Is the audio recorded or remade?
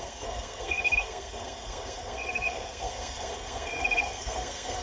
remade